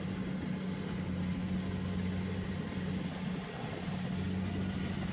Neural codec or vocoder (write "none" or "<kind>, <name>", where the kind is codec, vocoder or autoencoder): none